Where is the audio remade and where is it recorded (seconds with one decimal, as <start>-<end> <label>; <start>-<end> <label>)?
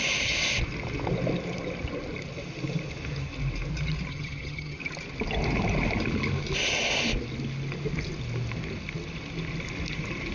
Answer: 0.0-4.1 recorded; 4.1-4.8 remade; 4.8-10.3 recorded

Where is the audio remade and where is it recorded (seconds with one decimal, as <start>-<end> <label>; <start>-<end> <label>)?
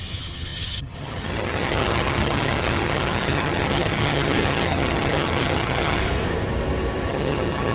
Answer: 0.0-6.0 remade; 6.0-7.1 recorded; 7.1-7.7 remade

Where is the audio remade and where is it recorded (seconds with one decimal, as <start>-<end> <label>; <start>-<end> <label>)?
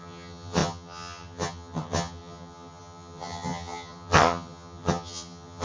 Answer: 0.0-5.6 remade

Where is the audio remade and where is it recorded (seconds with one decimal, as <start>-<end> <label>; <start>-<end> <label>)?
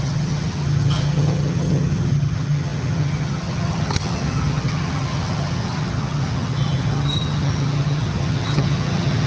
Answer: 0.0-9.3 remade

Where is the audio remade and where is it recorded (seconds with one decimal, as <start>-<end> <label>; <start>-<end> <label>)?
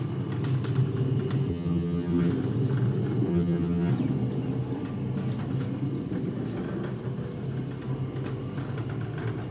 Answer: 0.0-1.5 recorded; 1.5-2.3 remade; 2.3-3.3 recorded; 3.3-3.9 remade; 3.9-9.5 recorded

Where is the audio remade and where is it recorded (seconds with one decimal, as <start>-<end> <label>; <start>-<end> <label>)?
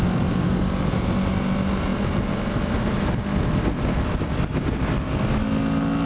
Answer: 0.0-6.1 recorded